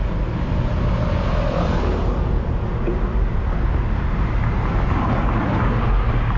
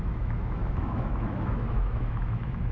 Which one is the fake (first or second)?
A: second